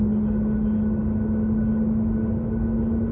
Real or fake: real